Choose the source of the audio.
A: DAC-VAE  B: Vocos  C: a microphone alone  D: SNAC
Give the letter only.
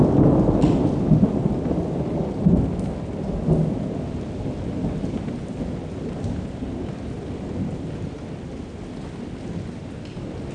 C